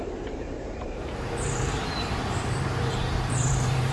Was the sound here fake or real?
fake